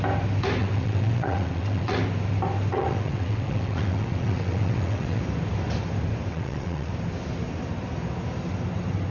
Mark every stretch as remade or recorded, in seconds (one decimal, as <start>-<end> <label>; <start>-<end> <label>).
0.0-0.6 recorded; 0.6-2.0 remade; 2.0-2.7 recorded; 2.7-5.2 remade; 5.2-6.3 recorded; 6.3-6.9 remade; 6.9-9.1 recorded